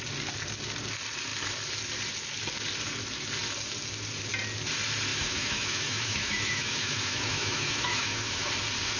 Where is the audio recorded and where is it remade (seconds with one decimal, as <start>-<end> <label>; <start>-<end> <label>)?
0.0-5.1 recorded; 5.1-8.5 remade; 8.5-9.0 recorded